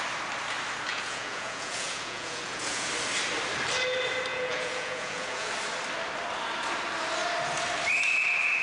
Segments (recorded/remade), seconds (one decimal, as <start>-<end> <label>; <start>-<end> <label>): 0.0-0.9 recorded; 0.9-2.9 remade; 2.9-4.3 recorded; 4.3-5.5 remade; 5.5-8.6 recorded